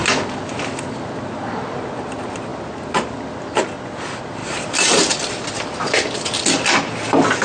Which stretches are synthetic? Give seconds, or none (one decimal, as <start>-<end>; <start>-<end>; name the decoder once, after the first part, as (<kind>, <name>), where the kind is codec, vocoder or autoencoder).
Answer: 4.4-5.1 (vocoder, BigVGAN v2)